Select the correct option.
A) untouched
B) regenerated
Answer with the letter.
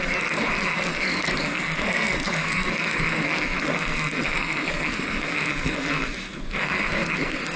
B